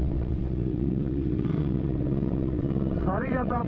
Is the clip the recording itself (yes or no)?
no